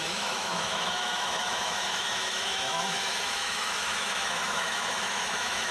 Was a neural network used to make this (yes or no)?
yes